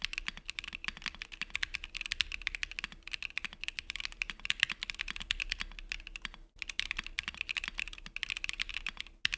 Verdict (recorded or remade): recorded